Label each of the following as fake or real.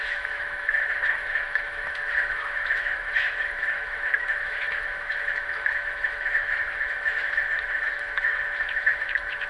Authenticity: fake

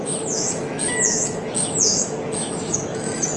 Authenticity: fake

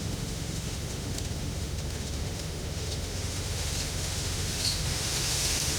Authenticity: fake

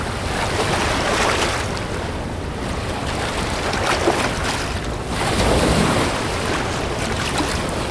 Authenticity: real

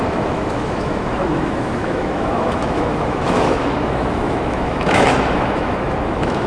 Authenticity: fake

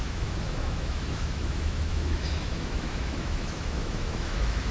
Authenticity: fake